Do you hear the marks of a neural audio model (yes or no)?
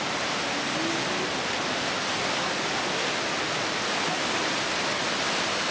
no